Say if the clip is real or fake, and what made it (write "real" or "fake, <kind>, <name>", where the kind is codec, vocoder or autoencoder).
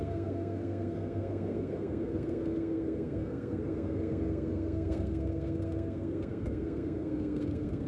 fake, codec, SNAC